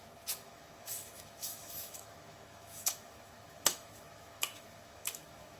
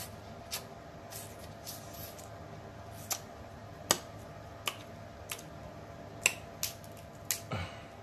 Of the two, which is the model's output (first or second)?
first